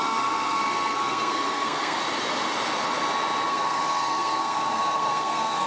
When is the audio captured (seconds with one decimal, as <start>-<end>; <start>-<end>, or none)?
2.0-3.5